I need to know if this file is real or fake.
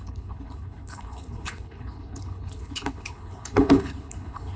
fake